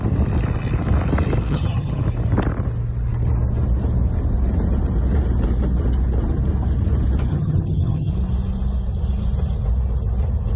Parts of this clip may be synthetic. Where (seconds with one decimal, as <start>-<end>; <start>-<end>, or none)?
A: 1.5-2.0; 7.3-8.1